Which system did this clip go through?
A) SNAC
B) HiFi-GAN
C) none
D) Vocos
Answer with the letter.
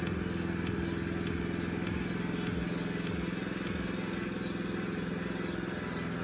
C